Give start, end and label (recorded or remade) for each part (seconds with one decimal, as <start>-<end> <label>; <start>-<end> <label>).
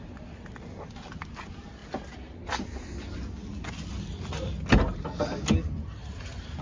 0.0-6.0 recorded; 6.0-6.6 remade